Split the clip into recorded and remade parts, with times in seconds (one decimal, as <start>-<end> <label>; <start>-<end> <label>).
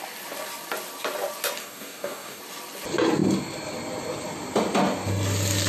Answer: 0.0-1.6 recorded; 1.6-2.4 remade; 2.4-5.7 recorded